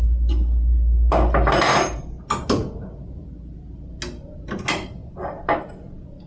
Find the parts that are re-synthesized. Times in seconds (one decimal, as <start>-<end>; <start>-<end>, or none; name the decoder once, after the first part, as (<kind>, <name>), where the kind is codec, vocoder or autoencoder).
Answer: none